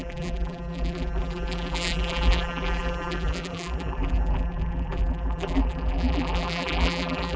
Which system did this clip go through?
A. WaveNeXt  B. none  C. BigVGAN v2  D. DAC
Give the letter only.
C